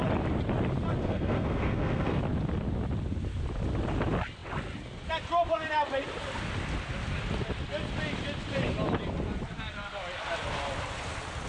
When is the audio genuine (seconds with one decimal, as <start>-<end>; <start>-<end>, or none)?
0.0-1.0; 2.2-11.5